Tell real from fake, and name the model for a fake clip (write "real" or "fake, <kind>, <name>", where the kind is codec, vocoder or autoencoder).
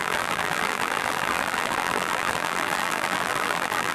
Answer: fake, vocoder, BigVGAN v2